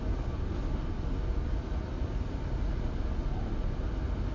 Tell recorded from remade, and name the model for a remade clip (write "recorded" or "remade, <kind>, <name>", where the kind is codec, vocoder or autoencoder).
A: recorded